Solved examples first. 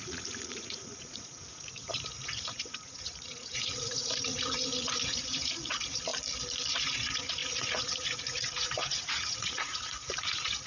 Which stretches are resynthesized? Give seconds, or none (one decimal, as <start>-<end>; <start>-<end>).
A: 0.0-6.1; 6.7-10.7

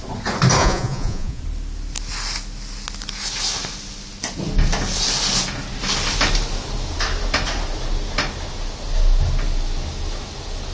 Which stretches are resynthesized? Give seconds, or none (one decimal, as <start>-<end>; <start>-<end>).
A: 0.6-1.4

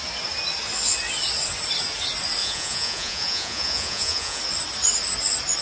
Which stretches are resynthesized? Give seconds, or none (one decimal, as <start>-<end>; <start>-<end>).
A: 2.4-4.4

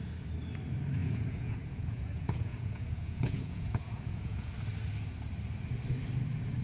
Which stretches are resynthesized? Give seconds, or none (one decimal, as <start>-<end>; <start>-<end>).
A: 1.0-4.5